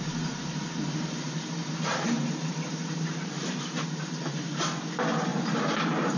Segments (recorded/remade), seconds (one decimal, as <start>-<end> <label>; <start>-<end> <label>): 0.0-1.6 recorded; 1.6-4.6 remade; 4.6-5.3 recorded; 5.3-6.2 remade